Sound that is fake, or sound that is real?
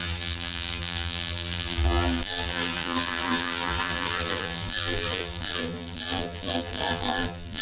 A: fake